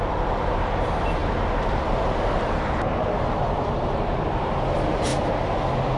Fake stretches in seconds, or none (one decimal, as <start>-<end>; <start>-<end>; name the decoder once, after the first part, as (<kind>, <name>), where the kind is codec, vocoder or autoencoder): 0.0-5.1 (vocoder, BigVGAN v2)